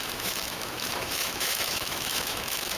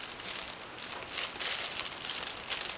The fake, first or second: first